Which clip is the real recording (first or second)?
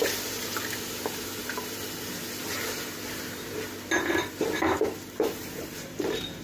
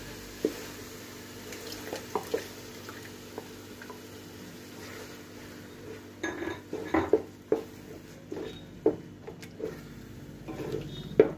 second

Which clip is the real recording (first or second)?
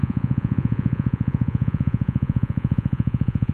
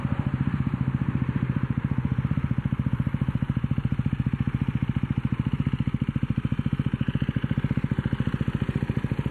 second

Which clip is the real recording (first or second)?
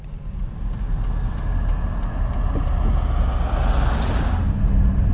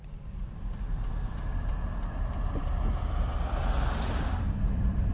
first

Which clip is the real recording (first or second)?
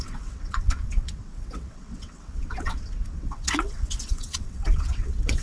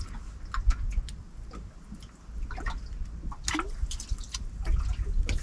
second